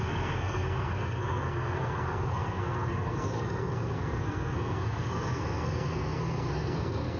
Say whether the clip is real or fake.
fake